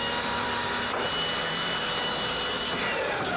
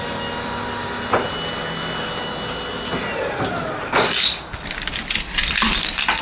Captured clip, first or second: second